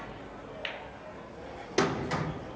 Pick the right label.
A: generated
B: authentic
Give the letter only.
B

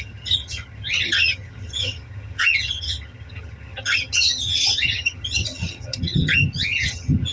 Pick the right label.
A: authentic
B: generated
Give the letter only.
B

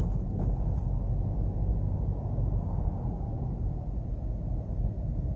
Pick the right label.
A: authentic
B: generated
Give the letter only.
A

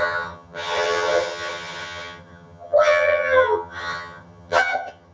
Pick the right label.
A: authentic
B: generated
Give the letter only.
B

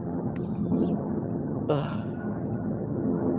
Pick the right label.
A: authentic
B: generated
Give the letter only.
B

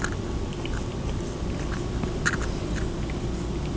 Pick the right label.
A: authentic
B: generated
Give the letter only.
A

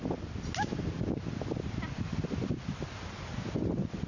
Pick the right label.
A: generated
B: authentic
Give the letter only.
B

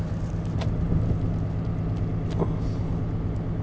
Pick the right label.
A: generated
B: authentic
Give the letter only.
B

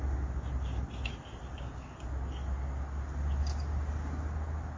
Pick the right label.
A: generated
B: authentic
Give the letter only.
B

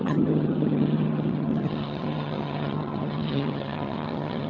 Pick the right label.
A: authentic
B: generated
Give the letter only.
B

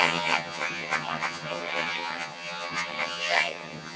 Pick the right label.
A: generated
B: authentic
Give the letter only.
A